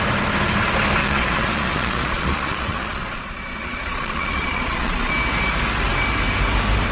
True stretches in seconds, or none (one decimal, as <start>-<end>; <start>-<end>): 0.0-1.0; 5.1-6.9